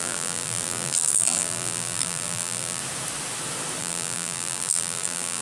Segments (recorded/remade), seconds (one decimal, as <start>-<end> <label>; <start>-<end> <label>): 0.0-2.8 remade; 2.8-3.8 recorded; 3.8-5.4 remade

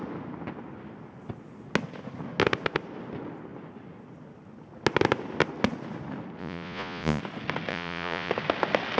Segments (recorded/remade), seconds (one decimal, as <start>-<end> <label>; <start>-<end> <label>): 0.0-6.4 recorded; 6.4-7.2 remade; 7.2-7.7 recorded; 7.7-8.3 remade; 8.3-9.0 recorded